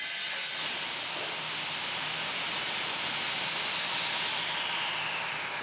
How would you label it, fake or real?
real